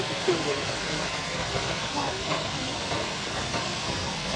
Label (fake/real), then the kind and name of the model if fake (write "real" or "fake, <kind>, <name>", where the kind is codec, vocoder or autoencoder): fake, codec, SNAC